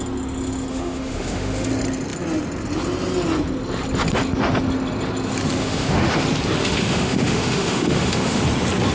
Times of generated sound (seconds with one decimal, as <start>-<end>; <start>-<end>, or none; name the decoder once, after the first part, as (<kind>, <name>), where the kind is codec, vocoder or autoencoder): 0.7-1.7 (autoencoder, DAC-VAE); 5.6-6.1; 6.6-8.4